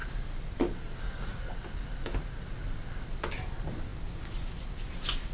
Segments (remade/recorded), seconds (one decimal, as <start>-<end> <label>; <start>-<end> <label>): 0.0-5.3 recorded